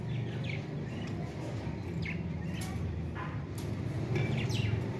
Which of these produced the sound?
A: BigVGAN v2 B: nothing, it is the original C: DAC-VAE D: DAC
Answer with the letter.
B